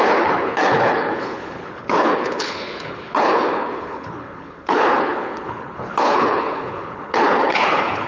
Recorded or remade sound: remade